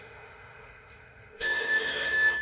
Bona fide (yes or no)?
no